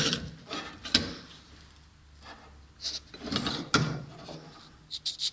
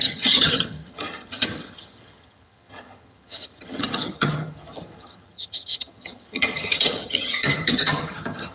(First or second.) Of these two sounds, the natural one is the first